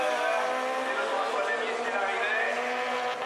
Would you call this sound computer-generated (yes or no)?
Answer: no